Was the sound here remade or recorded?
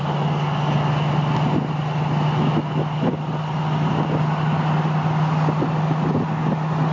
recorded